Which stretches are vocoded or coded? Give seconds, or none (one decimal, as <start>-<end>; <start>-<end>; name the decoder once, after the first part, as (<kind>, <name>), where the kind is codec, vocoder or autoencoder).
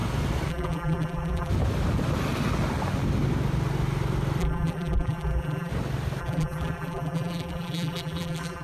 0.5-1.5 (vocoder, BigVGAN v2); 4.4-5.7; 6.2-8.6